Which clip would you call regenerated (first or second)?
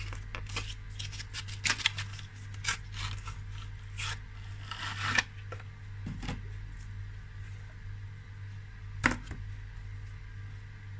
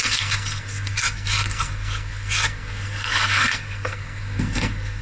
second